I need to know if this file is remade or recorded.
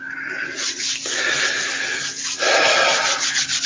recorded